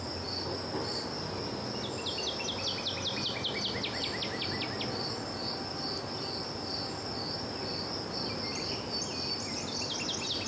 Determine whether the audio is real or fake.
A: real